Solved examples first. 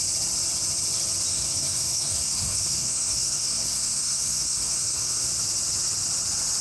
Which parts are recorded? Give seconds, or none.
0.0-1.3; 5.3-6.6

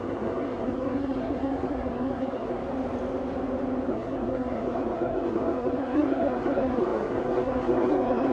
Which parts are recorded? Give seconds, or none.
2.6-3.9

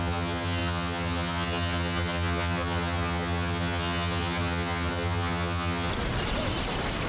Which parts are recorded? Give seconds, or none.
5.9-7.1